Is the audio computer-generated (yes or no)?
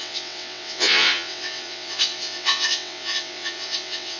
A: yes